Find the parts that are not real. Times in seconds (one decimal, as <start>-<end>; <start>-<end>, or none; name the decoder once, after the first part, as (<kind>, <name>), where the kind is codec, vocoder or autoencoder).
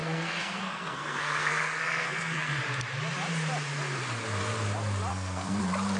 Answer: 0.0-2.6 (codec, SNAC); 5.1-5.6